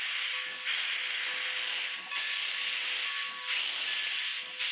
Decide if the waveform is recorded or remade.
recorded